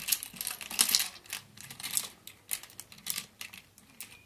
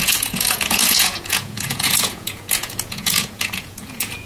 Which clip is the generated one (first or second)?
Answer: second